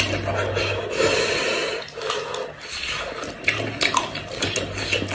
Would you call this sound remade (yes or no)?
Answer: no